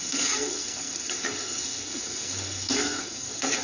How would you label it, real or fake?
fake